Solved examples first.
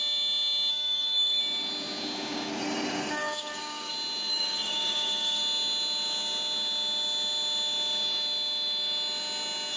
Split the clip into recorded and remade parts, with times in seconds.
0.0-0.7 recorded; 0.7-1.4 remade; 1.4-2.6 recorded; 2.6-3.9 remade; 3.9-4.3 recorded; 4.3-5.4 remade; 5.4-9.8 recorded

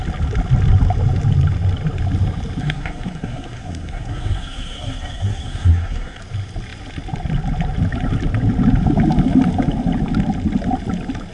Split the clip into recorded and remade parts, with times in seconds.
0.0-2.6 recorded; 2.6-6.2 remade; 6.2-11.3 recorded